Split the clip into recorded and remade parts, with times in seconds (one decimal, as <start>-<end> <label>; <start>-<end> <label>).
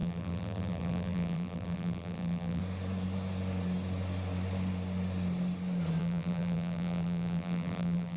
0.0-2.6 remade; 2.6-6.0 recorded; 6.0-8.2 remade